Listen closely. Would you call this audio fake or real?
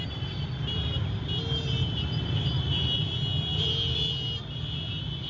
real